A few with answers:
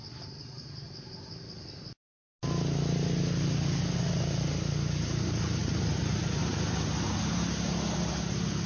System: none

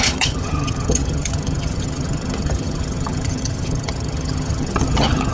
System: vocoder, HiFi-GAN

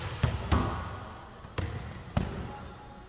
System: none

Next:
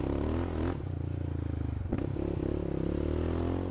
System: none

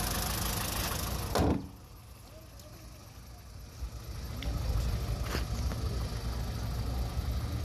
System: none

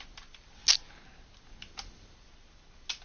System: none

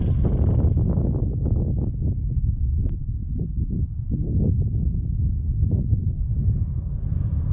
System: none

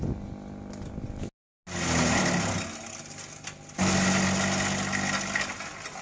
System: none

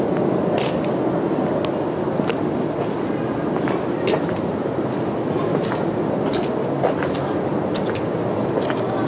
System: none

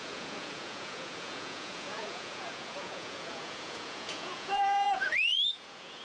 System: vocoder, Vocos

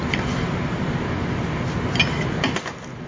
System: none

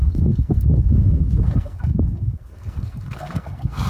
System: codec, SNAC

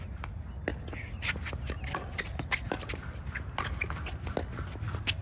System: none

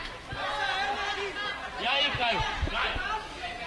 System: none